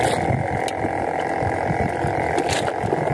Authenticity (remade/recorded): recorded